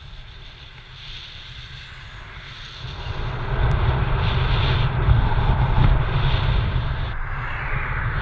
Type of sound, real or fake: real